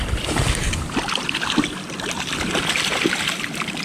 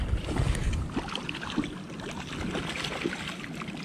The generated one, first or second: first